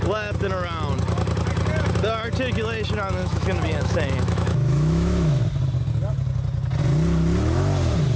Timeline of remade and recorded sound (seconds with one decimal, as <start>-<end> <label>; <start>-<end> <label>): 0.0-3.2 recorded; 3.2-5.4 remade; 5.4-8.2 recorded